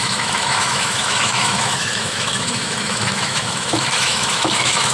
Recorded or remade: remade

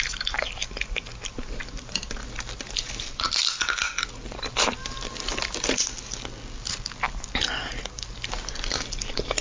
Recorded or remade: recorded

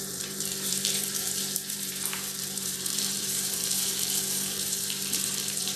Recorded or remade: remade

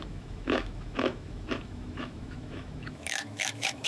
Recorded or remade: remade